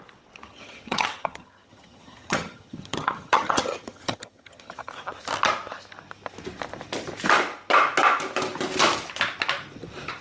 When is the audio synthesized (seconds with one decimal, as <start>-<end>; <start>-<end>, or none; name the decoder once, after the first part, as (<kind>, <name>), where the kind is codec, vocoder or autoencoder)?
0.4-4.9 (vocoder, HiFi-GAN)